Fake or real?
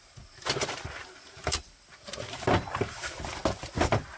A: real